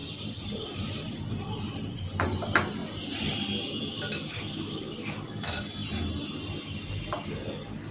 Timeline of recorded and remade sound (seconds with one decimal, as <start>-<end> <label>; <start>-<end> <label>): 0.0-1.9 remade; 1.9-7.9 recorded